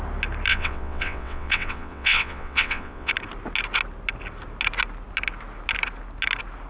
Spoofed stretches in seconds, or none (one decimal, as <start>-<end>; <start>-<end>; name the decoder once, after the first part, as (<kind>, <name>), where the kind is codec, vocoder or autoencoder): 0.5-3.1 (vocoder, WaveNeXt)